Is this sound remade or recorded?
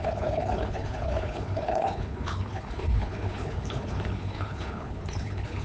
remade